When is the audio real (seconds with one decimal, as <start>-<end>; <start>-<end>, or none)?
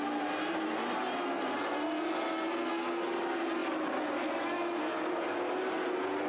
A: 0.0-6.3